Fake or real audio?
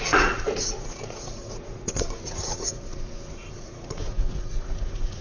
fake